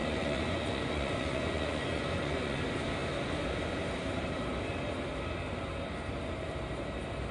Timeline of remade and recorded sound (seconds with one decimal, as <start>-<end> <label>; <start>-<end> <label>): 0.0-2.6 remade; 2.6-7.3 recorded